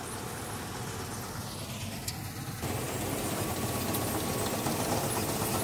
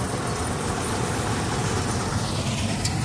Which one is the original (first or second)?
first